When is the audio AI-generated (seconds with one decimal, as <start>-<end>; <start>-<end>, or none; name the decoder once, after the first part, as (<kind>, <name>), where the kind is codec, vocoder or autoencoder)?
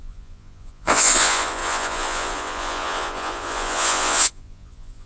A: 0.0-5.1 (vocoder, Vocos)